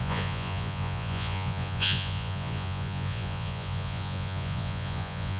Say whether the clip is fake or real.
fake